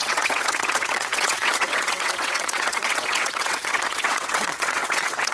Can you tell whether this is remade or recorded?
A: remade